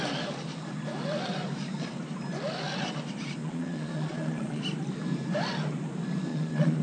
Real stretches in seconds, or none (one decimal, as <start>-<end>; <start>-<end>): 0.0-3.4; 4.6-6.3